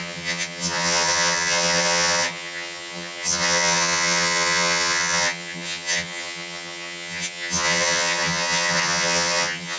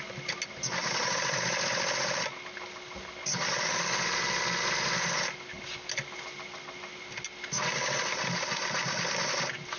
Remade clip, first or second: first